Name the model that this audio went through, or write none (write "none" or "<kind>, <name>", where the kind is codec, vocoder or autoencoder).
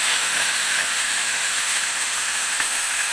autoencoder, DAC-VAE